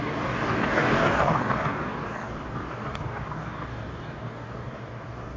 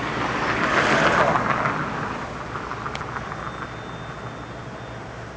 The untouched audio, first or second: second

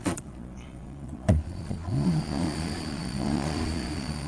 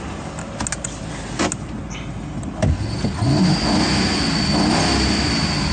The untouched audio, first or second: second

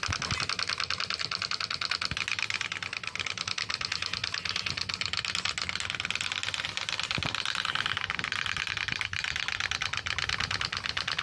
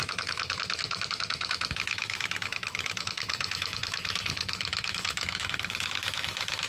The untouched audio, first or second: first